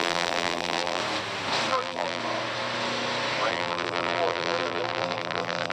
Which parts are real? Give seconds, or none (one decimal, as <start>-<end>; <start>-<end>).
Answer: 1.0-1.7; 2.2-3.5